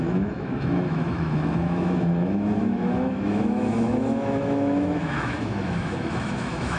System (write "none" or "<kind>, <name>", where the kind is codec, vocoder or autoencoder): autoencoder, DAC-VAE